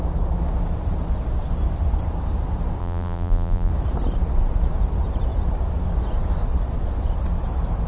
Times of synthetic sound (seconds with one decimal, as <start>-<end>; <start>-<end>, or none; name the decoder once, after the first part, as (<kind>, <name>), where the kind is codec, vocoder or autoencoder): 2.8-3.7 (vocoder, BigVGAN v2)